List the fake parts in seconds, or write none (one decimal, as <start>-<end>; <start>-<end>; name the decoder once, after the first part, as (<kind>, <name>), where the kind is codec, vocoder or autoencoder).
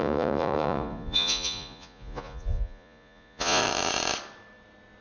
0.0-3.6 (vocoder, Vocos)